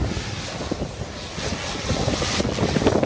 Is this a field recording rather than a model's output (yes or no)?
yes